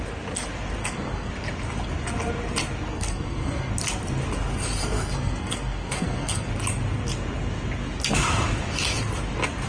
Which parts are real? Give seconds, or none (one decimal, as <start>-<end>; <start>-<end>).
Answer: 0.0-0.8; 1.3-2.9; 3.7-4.8; 6.5-9.7